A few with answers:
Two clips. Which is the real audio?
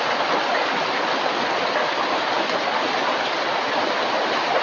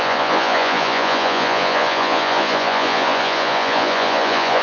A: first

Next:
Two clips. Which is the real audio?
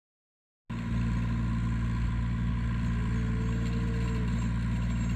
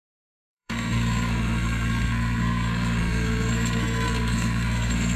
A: first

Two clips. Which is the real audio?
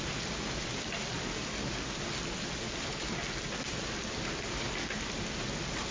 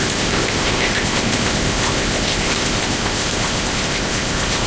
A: first